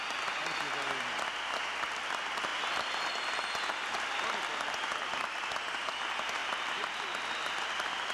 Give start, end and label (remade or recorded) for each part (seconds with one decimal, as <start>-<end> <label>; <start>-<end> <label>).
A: 0.0-8.1 recorded

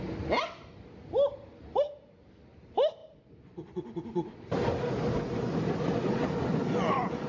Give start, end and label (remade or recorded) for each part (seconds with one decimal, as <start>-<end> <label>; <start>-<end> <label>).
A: 0.0-7.3 recorded

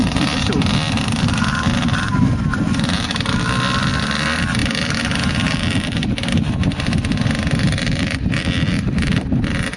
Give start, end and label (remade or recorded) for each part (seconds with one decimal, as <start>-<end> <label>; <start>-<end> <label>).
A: 0.0-9.8 recorded

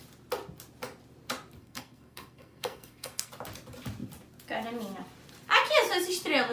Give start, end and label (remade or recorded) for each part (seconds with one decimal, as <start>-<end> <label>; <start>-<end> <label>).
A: 0.0-1.6 recorded; 1.6-3.3 remade; 3.3-6.5 recorded

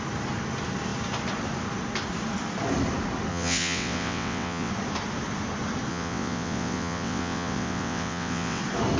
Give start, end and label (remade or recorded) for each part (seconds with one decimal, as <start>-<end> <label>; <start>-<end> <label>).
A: 0.0-3.3 recorded; 3.3-4.7 remade; 4.7-5.9 recorded; 5.9-8.6 remade; 8.6-9.0 recorded

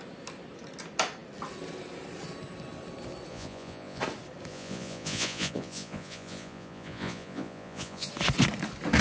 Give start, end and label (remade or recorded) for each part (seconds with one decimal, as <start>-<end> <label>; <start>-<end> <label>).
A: 0.0-3.3 recorded; 3.3-4.0 remade; 4.0-4.5 recorded; 4.5-8.1 remade; 8.1-9.0 recorded